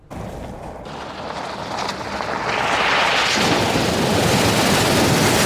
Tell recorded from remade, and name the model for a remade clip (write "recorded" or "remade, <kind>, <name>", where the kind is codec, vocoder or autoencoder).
recorded